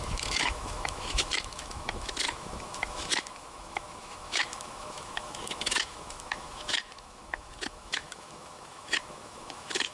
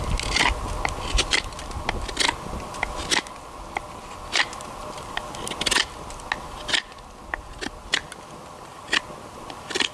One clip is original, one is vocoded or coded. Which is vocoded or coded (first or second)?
first